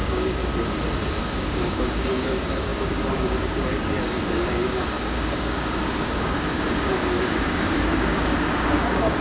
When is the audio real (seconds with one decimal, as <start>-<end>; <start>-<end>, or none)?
0.4-1.2